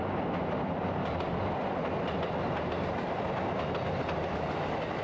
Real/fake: real